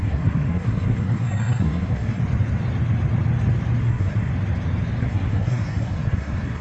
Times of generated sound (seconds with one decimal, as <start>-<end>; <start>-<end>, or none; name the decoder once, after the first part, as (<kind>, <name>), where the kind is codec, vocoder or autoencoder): 0.0-2.2 (codec, SNAC); 3.8-4.3; 5.0-6.6